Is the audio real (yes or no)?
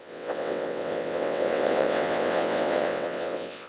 no